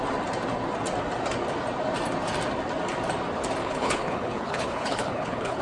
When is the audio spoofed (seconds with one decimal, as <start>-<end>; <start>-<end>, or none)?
3.6-5.6